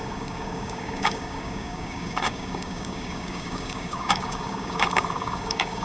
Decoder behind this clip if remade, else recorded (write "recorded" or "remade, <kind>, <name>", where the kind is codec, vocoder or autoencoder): remade, codec, DAC